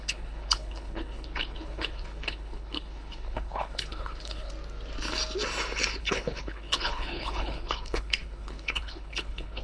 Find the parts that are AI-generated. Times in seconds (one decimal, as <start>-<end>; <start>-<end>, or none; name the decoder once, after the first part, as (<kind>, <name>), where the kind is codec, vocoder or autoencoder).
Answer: 0.0-4.5 (codec, HILCodec); 6.0-9.6